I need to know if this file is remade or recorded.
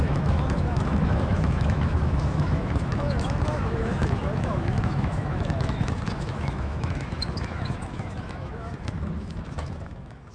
remade